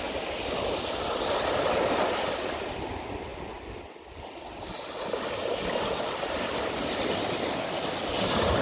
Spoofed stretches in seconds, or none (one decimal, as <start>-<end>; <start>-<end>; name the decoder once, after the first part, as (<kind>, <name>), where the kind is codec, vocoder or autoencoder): none